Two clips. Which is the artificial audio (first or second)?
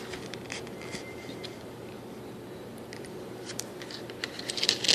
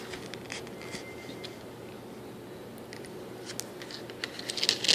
first